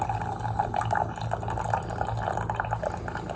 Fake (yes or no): no